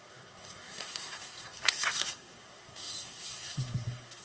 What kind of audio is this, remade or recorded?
remade